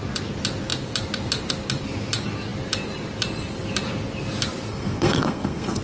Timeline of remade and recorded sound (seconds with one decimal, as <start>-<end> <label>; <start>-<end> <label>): 0.0-4.7 recorded; 4.7-5.8 remade